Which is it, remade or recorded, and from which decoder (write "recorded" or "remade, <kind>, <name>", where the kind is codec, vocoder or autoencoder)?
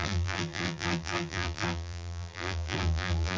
remade, vocoder, BigVGAN v2